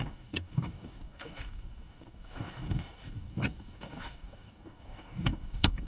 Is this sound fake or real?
fake